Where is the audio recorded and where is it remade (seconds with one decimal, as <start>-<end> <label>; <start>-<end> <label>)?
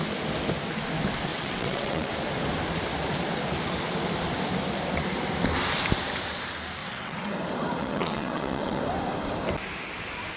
0.0-1.3 recorded; 1.3-2.1 remade; 2.1-6.8 recorded; 6.8-7.3 remade; 7.3-7.8 recorded; 7.8-8.8 remade; 8.8-10.4 recorded